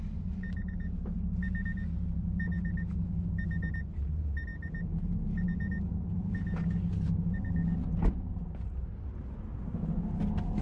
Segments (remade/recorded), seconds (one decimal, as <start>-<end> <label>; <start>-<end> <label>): 0.0-10.6 recorded